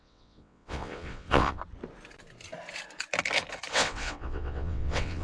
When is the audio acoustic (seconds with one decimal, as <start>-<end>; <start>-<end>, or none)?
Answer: 1.6-3.7